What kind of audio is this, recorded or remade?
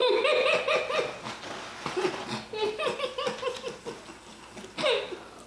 recorded